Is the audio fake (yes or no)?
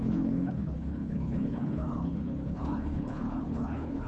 yes